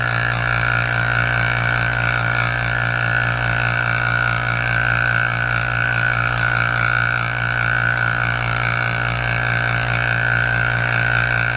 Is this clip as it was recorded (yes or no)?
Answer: yes